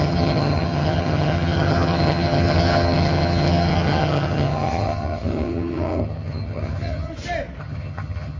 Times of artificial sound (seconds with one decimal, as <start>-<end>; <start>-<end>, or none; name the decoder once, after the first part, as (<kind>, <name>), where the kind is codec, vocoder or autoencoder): 0.0-7.1 (vocoder, HiFi-GAN); 7.6-8.4